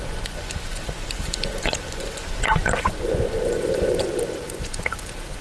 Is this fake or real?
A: fake